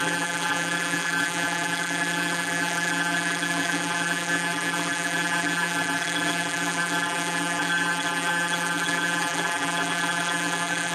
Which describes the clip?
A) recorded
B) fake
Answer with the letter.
B